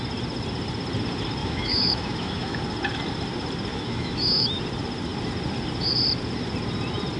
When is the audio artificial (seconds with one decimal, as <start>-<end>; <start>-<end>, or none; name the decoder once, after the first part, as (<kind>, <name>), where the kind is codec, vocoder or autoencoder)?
1.4-2.6 (autoencoder, DAC-VAE); 3.7-4.6

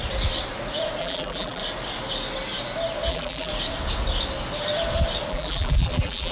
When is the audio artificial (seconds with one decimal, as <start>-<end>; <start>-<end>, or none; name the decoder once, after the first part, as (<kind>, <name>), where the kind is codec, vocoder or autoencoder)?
1.0-1.6 (vocoder, BigVGAN v2); 3.1-3.5; 5.3-6.3

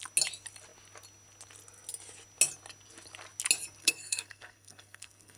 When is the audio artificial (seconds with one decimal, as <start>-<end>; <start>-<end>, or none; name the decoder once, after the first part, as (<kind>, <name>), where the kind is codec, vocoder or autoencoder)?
3.8-5.4 (codec, SNAC)